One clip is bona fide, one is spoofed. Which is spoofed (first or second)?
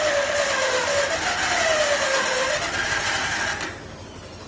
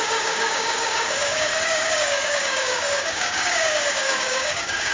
second